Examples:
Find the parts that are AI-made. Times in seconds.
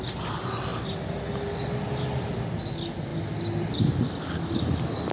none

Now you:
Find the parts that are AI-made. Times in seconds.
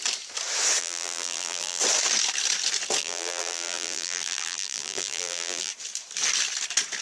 0.8-1.8 (vocoder, BigVGAN v2); 3.0-5.7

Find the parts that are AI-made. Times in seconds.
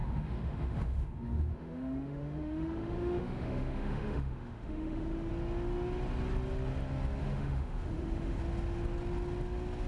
0.0-5.3 (autoencoder, DAC-VAE); 7.2-8.4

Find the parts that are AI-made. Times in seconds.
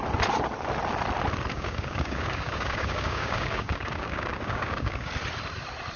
1.5-5.1 (codec, DAC)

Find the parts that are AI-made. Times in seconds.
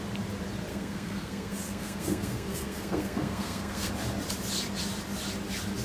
0.7-3.9 (codec, SNAC)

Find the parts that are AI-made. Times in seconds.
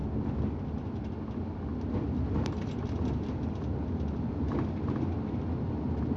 0.0-0.6 (vocoder, BigVGAN v2); 1.7-5.4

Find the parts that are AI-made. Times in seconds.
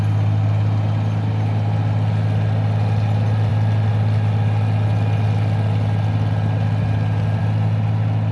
none